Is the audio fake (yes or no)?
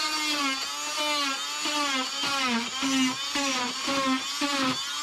no